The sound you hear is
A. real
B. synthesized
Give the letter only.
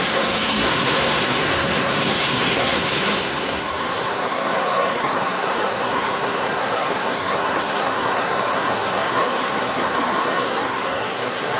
B